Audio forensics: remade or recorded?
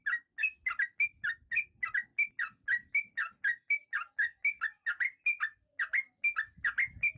recorded